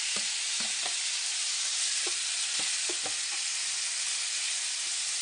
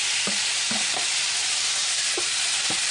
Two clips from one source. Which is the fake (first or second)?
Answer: second